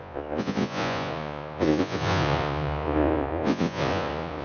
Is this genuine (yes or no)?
no